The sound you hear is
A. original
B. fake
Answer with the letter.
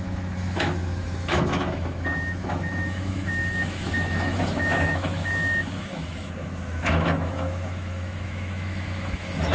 B